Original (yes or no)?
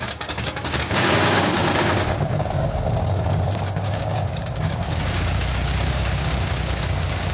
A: no